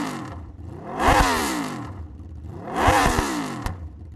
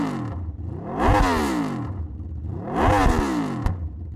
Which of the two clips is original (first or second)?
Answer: second